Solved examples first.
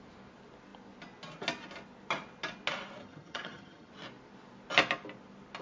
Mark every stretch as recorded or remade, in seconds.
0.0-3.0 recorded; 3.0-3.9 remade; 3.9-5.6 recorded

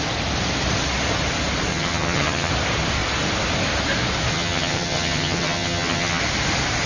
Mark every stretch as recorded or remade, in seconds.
0.0-1.7 recorded; 1.7-2.5 remade; 2.5-4.3 recorded; 4.3-6.2 remade; 6.2-6.9 recorded

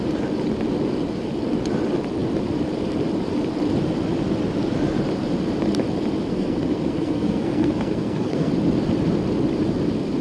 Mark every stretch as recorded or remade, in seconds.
0.0-6.3 recorded; 6.3-8.5 remade; 8.5-10.2 recorded

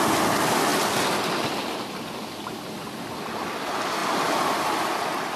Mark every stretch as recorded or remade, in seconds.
0.0-5.4 recorded

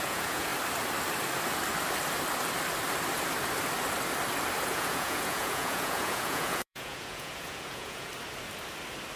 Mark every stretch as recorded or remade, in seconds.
0.0-0.5 remade; 0.5-4.6 recorded; 4.6-8.1 remade; 8.1-9.2 recorded